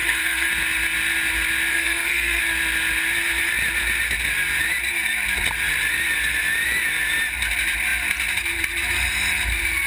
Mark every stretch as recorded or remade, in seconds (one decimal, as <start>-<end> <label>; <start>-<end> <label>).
0.0-0.5 remade; 0.5-1.7 recorded; 1.7-2.4 remade; 2.4-9.9 recorded